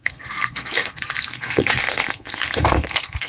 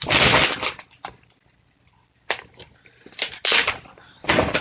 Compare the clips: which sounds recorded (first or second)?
second